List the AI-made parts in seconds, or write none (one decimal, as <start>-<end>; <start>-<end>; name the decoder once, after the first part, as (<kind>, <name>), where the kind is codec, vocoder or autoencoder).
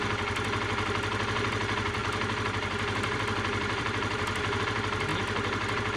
2.0-4.6 (vocoder, BigVGAN v2)